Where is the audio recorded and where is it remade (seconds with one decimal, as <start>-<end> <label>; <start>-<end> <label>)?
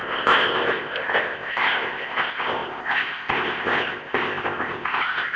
0.0-5.4 remade